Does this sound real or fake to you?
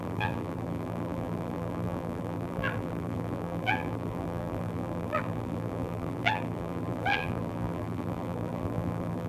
fake